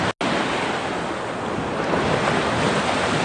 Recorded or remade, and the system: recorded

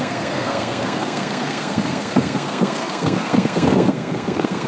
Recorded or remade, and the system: remade, codec, SNAC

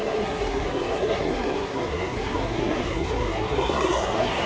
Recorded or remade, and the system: remade, codec, SNAC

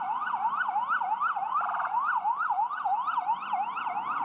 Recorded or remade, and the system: recorded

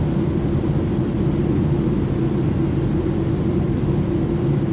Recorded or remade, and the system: recorded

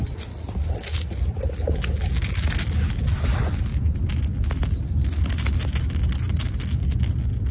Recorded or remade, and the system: recorded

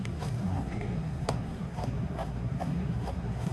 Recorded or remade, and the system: remade, codec, SNAC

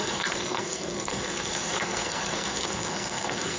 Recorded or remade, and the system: remade, codec, SNAC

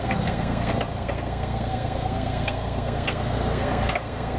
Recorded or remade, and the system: remade, codec, SNAC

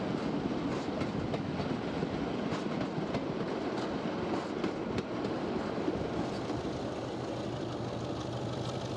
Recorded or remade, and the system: recorded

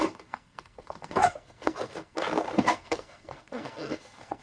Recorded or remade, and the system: remade, codec, SNAC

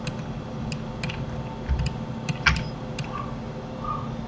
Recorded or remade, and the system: recorded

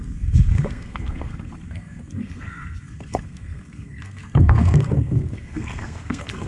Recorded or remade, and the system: remade, codec, SNAC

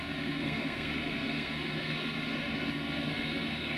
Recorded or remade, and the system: remade, codec, SNAC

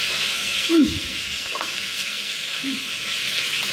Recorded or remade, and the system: remade, codec, SNAC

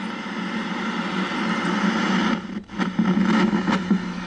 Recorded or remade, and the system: recorded